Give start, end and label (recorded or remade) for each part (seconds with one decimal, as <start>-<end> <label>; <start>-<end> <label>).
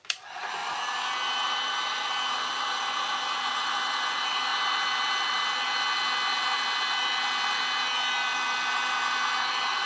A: 0.0-9.9 recorded